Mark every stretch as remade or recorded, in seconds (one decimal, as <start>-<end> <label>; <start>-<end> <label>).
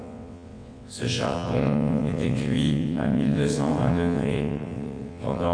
0.0-5.5 remade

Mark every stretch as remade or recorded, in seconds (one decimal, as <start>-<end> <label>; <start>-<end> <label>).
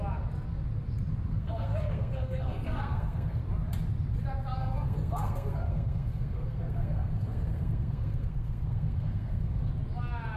0.0-1.3 recorded; 1.3-3.4 remade; 3.4-4.6 recorded; 4.6-9.7 remade; 9.7-10.4 recorded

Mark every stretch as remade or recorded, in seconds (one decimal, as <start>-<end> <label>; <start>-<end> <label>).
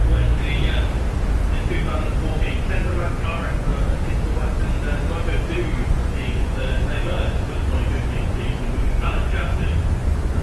0.0-2.4 recorded; 2.4-3.7 remade; 3.7-5.5 recorded; 5.5-10.4 remade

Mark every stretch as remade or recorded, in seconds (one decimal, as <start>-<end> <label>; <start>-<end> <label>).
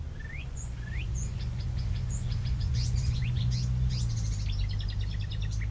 0.0-0.4 recorded; 0.4-3.4 remade; 3.4-5.7 recorded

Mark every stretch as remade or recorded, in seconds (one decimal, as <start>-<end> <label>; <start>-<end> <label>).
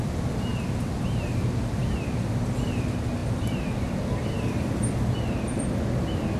0.0-0.5 recorded; 0.5-1.2 remade; 1.2-1.8 recorded; 1.8-2.6 remade; 2.6-3.2 recorded; 3.2-4.9 remade; 4.9-6.4 recorded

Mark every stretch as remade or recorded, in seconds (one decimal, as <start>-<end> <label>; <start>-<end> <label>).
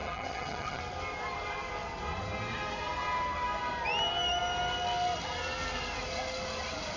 0.0-0.8 remade; 0.8-7.0 recorded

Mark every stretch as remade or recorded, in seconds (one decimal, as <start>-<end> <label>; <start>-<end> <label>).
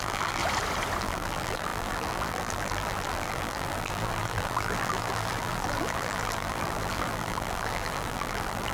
0.0-0.4 remade; 0.4-1.0 recorded; 1.0-8.7 remade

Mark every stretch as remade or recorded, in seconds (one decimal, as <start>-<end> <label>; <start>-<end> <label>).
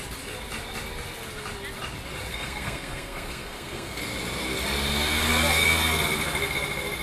0.0-2.3 recorded; 2.3-4.0 remade; 4.0-7.0 recorded